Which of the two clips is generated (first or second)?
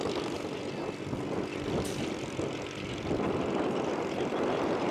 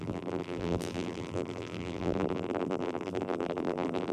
second